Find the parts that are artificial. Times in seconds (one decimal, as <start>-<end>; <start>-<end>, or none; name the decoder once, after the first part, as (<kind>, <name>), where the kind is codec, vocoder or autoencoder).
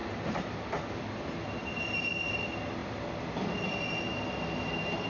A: none